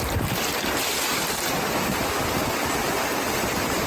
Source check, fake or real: real